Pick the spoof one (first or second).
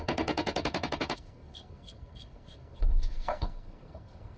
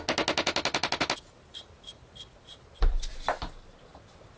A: first